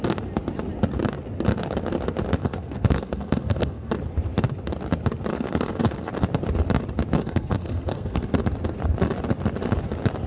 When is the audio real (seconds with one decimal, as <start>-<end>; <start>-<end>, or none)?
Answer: 0.0-2.4; 3.9-5.3; 6.1-7.2; 8.3-10.3